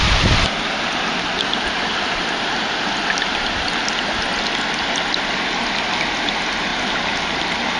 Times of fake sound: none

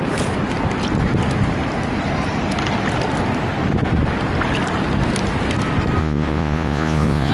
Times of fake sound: 6.0-7.3 (vocoder, Vocos)